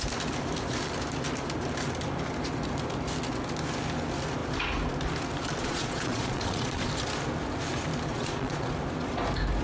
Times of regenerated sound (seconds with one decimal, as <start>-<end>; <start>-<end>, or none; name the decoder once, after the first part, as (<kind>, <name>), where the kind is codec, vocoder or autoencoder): 5.6-6.9 (vocoder, Vocos); 8.1-8.7

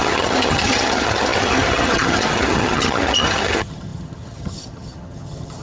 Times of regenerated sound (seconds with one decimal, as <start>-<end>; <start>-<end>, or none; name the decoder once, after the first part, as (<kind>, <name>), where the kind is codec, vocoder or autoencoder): 0.0-5.6 (vocoder, HiFi-GAN)

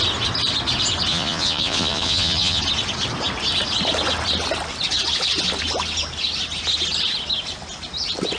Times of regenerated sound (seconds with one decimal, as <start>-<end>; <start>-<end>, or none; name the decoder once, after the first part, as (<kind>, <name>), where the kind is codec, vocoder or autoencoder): 1.1-2.6 (vocoder, Vocos)

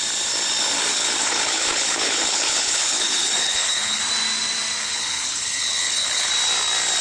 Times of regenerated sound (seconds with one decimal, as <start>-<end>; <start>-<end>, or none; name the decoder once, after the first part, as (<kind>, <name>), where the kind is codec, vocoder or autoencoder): 0.9-4.0 (codec, HILCodec); 4.8-6.3